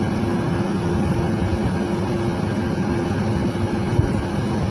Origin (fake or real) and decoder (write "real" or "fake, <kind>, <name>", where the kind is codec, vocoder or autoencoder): real